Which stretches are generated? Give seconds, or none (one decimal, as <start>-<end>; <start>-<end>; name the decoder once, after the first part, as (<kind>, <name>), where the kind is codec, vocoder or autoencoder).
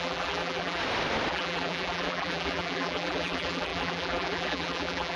0.0-0.8 (vocoder, BigVGAN v2); 1.3-5.2